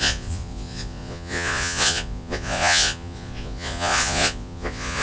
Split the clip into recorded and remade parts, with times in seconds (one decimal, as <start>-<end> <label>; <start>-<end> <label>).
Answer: 0.0-5.0 remade